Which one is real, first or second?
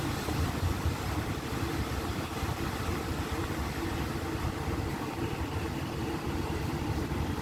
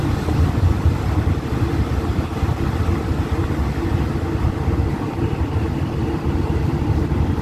second